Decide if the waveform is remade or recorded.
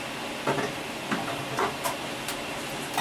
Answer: recorded